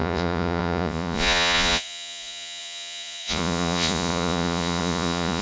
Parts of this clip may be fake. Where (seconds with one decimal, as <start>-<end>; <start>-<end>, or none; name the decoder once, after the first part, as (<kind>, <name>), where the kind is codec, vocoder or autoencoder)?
0.0-5.4 (vocoder, Vocos)